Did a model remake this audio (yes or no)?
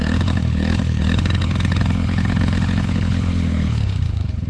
yes